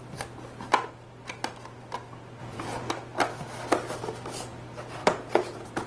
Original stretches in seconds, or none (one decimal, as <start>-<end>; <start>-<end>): 0.0-2.4; 2.9-5.0